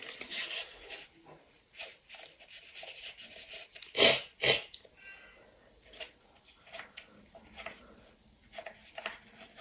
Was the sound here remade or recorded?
recorded